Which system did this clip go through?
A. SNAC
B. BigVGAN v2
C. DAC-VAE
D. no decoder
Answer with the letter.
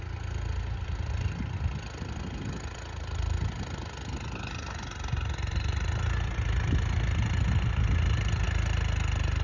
D